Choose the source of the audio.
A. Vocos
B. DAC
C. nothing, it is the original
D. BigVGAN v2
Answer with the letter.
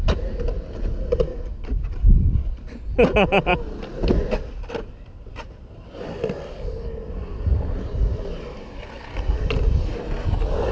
C